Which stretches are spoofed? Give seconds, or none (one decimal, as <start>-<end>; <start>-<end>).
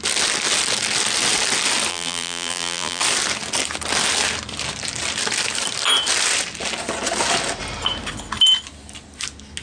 1.9-3.0